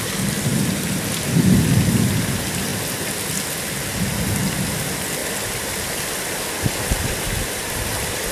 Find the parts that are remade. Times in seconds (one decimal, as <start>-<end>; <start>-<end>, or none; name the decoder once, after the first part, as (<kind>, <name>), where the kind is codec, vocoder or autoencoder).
0.0-2.7 (vocoder, BigVGAN v2); 4.7-8.3